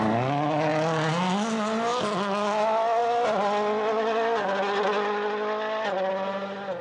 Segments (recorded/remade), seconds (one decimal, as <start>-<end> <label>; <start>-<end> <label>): 0.0-6.8 recorded